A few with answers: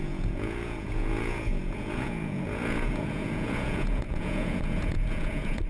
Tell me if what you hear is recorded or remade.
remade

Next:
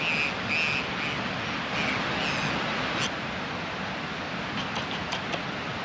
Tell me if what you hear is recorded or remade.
recorded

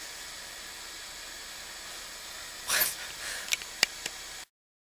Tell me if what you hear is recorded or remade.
recorded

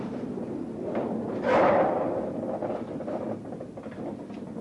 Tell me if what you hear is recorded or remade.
recorded